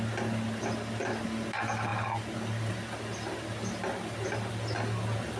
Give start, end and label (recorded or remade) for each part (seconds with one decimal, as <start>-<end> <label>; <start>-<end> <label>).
0.0-5.4 recorded